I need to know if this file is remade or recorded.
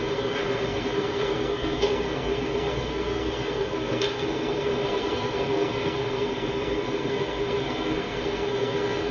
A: remade